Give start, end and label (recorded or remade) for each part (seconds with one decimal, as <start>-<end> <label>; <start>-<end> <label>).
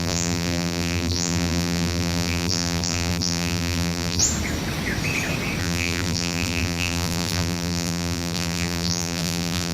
0.0-4.2 remade; 4.2-5.6 recorded; 5.6-9.7 remade